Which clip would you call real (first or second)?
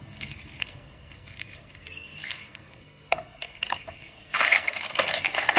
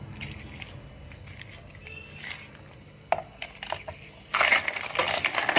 second